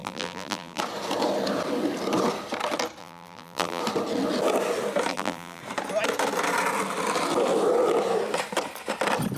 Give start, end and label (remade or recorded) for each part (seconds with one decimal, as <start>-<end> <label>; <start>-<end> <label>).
0.0-0.8 remade; 0.8-3.0 recorded; 3.0-3.8 remade; 3.8-5.1 recorded; 5.1-5.6 remade; 5.6-9.4 recorded